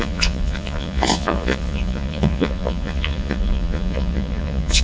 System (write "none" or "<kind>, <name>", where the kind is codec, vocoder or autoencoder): vocoder, Vocos